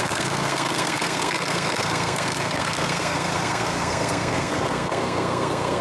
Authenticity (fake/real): fake